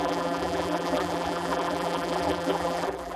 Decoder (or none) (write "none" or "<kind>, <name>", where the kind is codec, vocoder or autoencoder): vocoder, BigVGAN v2